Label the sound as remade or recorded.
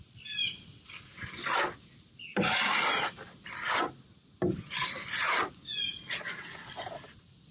recorded